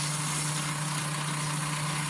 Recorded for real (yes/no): yes